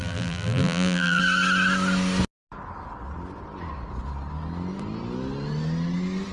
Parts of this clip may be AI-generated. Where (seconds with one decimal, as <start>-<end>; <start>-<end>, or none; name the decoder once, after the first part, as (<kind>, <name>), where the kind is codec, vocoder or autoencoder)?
0.0-1.2 (vocoder, BigVGAN v2)